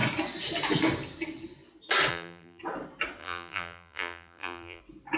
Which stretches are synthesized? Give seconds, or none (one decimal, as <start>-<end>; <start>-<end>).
2.1-2.6; 3.2-4.8